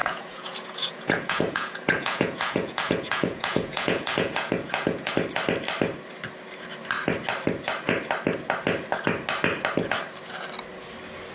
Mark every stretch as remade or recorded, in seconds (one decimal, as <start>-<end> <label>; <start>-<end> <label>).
0.0-5.1 remade; 5.1-11.3 recorded